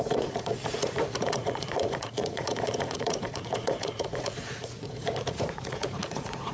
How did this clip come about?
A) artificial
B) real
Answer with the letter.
A